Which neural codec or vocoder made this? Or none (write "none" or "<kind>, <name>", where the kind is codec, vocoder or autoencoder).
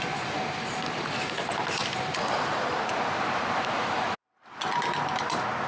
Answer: none